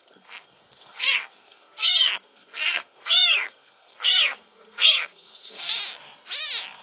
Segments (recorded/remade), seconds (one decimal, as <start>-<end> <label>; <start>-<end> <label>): 0.0-5.8 remade; 5.8-6.8 recorded